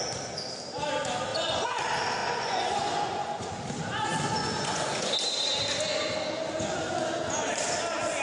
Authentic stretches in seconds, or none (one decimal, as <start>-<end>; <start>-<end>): 0.0-1.3; 1.8-2.2; 3.5-4.4; 5.1-8.2